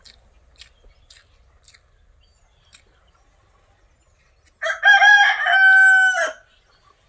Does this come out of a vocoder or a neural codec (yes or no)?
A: no